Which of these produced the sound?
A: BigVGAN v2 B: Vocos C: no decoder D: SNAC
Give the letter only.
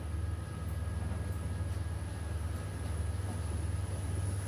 C